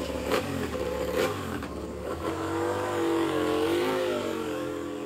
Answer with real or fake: fake